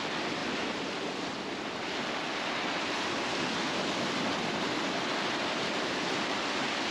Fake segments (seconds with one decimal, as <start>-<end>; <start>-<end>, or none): none